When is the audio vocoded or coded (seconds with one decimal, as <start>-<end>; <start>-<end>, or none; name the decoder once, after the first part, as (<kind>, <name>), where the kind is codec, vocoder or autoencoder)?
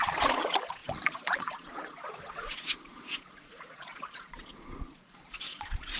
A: 0.0-6.0 (vocoder, Vocos)